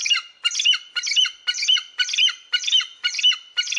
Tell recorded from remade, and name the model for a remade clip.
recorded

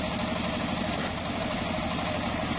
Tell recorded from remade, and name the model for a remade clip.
recorded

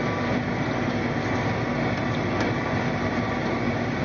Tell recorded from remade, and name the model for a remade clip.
recorded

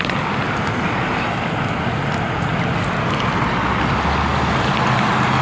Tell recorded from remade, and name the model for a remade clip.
recorded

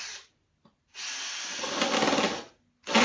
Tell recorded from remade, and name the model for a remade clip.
recorded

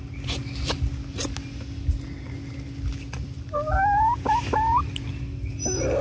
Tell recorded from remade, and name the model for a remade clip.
recorded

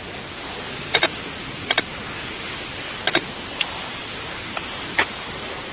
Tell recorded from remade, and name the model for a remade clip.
recorded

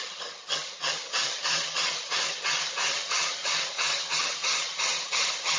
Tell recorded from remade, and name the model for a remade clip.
remade, vocoder, HiFi-GAN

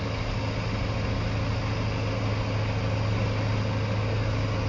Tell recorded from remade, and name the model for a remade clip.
recorded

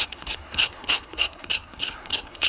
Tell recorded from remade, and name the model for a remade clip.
remade, codec, SNAC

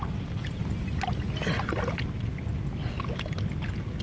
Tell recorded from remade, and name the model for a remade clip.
recorded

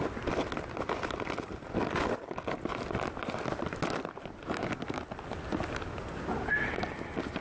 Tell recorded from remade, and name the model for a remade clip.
recorded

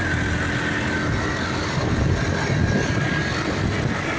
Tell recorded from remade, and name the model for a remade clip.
recorded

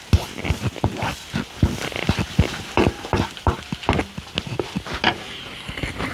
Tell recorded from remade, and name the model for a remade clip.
recorded